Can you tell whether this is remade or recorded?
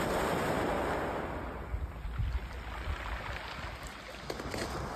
recorded